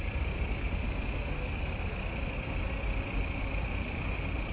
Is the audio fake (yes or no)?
no